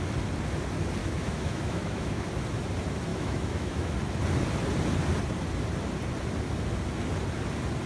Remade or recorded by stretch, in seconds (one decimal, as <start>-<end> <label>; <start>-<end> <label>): 0.0-1.0 recorded; 1.0-2.2 remade; 2.2-3.1 recorded; 3.1-3.9 remade; 3.9-7.9 recorded